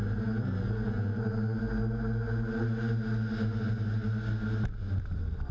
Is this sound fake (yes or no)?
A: no